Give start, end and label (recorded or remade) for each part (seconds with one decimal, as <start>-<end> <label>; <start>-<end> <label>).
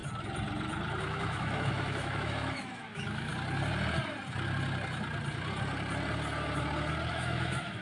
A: 0.0-1.0 recorded; 1.0-3.3 remade; 3.3-7.1 recorded; 7.1-7.8 remade